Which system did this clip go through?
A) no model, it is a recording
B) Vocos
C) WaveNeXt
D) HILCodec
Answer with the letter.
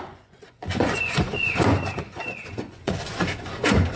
B